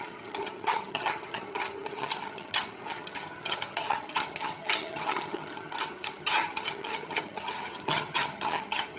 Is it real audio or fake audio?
fake